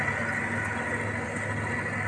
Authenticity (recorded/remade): recorded